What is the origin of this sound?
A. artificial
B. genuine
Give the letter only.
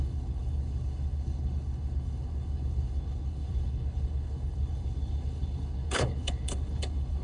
A